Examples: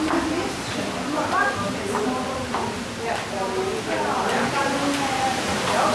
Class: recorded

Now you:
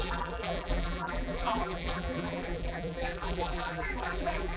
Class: remade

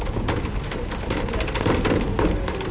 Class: recorded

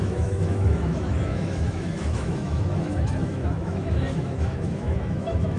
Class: remade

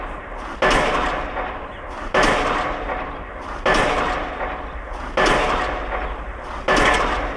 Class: recorded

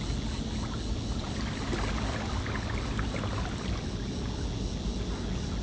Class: recorded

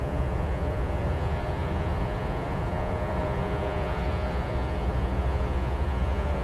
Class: remade